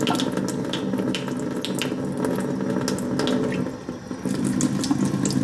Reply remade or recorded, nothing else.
recorded